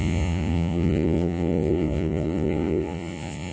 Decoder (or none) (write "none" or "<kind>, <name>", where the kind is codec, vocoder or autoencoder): vocoder, Vocos